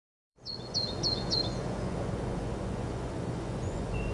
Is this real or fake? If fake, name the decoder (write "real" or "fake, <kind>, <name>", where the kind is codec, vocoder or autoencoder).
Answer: fake, vocoder, Vocos